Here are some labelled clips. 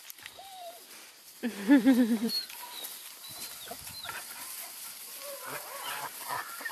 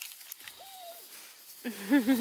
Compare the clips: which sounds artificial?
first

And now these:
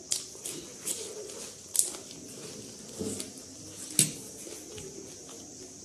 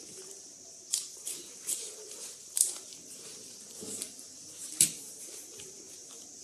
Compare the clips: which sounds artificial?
second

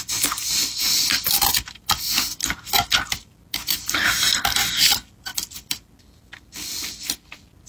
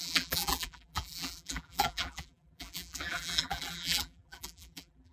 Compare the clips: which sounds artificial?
second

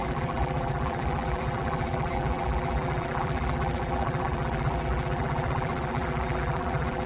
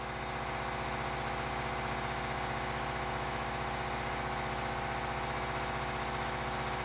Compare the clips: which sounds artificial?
first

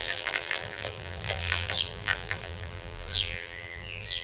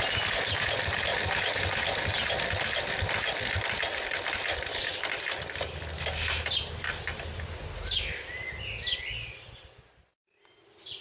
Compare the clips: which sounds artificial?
first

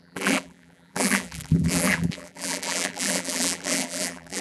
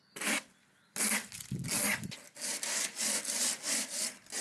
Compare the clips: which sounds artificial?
first